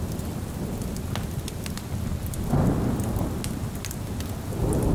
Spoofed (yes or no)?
no